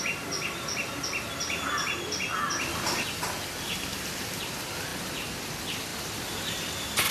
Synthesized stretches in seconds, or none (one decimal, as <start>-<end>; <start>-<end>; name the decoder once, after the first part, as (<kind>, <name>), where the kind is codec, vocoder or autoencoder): 5.9-6.6 (vocoder, BigVGAN v2)